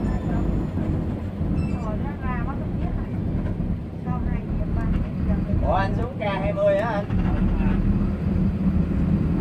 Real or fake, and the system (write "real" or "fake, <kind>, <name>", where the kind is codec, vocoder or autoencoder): real